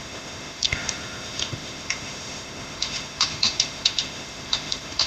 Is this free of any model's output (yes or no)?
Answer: no